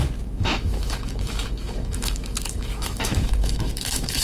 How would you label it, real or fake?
fake